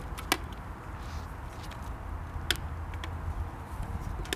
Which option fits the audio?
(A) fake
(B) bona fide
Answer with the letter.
B